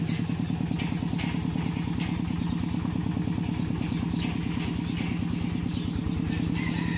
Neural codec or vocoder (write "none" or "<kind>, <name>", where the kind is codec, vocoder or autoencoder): none